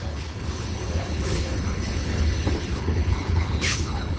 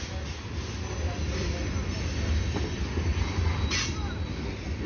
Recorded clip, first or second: second